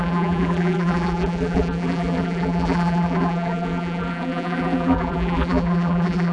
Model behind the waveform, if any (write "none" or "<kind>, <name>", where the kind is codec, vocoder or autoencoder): vocoder, BigVGAN v2